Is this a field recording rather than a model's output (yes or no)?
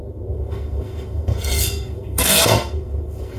no